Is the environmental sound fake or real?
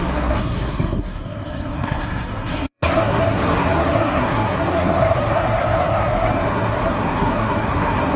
fake